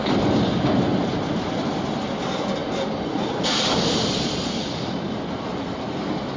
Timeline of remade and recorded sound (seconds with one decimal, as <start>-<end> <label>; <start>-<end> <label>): 0.0-1.8 remade; 1.8-2.6 recorded; 2.6-5.1 remade; 5.1-6.4 recorded